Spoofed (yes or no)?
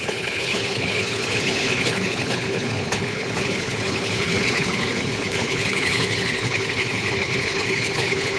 yes